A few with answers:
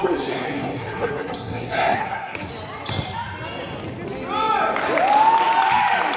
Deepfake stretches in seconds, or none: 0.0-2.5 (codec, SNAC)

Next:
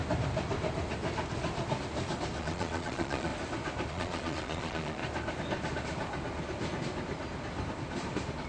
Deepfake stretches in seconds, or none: 2.4-3.3 (vocoder, Vocos); 3.9-5.0

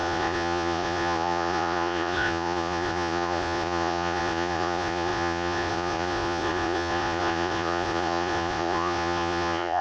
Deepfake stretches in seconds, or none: 0.0-9.8 (vocoder, Vocos)

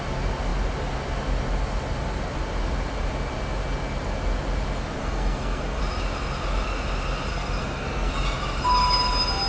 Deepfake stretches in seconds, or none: 5.0-5.8 (codec, SNAC); 7.3-8.1

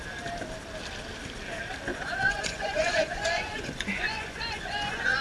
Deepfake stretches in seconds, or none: 1.9-5.2 (vocoder, Vocos)

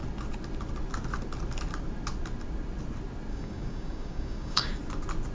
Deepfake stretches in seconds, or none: 3.3-4.8 (codec, DAC)

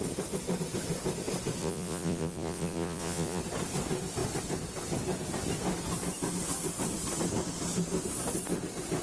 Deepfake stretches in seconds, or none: 1.6-3.4 (vocoder, Vocos)

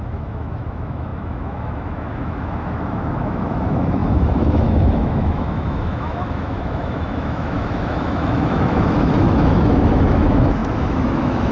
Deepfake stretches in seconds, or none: 0.0-11.5 (autoencoder, DAC-VAE)